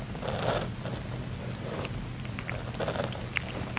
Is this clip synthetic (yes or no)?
no